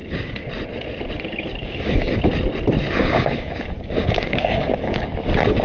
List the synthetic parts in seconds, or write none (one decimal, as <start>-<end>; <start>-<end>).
0.0-0.5; 1.6-2.2; 3.0-5.1